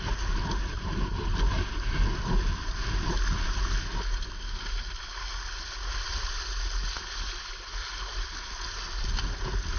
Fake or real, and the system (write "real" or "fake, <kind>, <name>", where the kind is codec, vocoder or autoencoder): real